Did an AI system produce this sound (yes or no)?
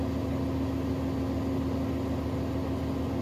no